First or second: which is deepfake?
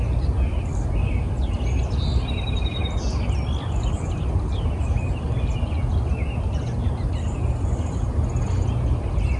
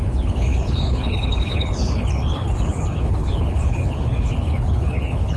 second